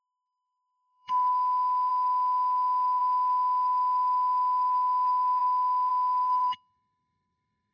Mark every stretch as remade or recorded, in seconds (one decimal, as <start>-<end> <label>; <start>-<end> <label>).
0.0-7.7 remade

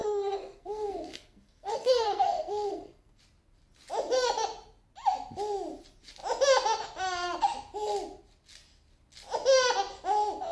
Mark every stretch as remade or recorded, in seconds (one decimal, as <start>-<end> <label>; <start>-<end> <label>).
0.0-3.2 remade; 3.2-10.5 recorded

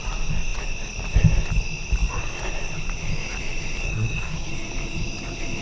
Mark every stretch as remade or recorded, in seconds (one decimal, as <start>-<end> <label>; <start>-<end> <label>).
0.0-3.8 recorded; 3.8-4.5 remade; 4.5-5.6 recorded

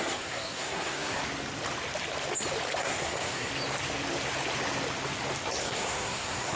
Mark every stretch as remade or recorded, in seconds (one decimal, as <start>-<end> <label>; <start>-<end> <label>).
0.0-1.2 remade; 1.2-2.8 recorded; 2.8-3.5 remade; 3.5-5.6 recorded; 5.6-6.6 remade

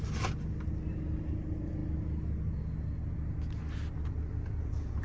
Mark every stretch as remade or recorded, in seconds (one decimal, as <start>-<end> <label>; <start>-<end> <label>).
0.0-5.0 recorded

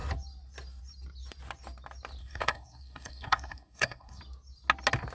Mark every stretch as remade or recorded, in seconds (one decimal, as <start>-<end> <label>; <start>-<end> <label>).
0.0-2.2 recorded; 2.2-4.2 remade; 4.2-5.1 recorded

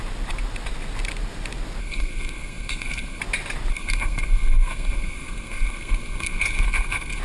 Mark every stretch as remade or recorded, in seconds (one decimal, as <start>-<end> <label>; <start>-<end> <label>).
0.0-1.8 recorded; 1.8-3.2 remade; 3.2-3.7 recorded; 3.7-7.2 remade

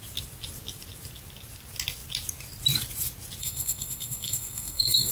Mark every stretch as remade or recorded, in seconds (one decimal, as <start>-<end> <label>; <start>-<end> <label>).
0.0-3.4 recorded; 3.4-5.1 remade